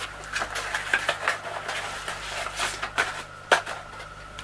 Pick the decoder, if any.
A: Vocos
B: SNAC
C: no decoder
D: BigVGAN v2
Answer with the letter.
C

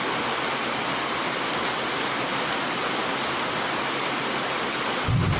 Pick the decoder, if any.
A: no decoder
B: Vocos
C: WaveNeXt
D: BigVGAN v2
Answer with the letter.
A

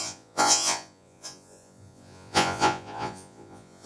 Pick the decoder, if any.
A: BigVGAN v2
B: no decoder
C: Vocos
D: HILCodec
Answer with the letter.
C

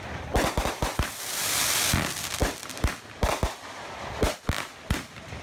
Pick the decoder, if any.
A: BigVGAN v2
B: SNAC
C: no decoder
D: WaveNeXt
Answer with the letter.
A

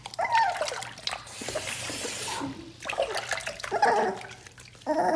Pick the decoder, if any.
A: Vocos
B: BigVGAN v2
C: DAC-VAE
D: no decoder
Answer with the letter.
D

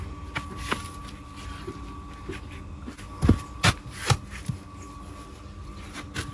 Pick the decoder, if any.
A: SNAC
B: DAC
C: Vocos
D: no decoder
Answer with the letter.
D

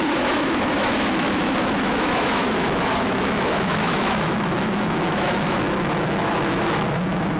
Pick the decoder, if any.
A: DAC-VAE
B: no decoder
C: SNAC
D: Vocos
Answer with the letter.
A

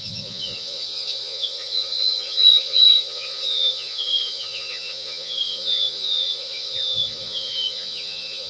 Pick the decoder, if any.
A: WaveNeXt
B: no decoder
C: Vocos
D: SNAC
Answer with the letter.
C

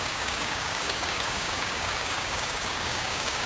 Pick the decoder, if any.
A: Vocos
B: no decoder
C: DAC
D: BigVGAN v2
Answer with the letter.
C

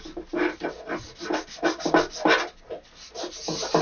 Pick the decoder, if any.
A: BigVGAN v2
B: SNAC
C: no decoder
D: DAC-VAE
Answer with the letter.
C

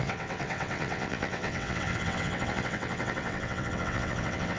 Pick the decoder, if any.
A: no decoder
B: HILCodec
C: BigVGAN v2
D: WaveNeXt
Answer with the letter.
D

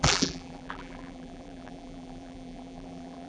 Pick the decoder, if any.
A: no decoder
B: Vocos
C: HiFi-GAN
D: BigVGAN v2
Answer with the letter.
D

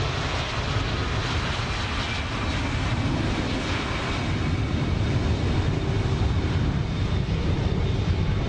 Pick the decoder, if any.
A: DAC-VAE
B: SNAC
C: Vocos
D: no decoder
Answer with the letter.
D